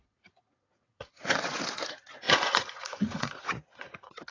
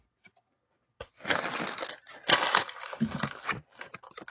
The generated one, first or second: first